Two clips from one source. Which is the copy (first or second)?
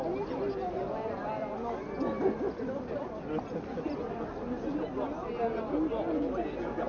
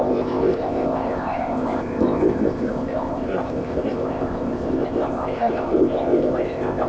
second